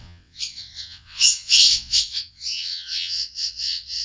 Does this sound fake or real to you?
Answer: fake